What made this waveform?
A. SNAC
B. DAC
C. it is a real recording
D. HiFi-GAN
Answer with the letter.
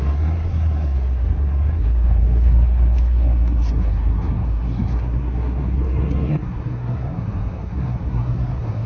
A